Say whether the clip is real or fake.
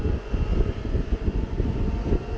fake